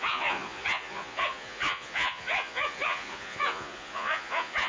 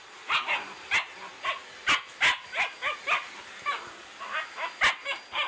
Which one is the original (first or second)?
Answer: second